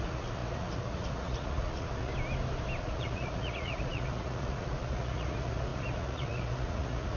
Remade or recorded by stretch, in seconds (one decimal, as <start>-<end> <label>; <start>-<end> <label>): 0.0-2.1 remade; 2.1-2.8 recorded; 2.8-7.2 remade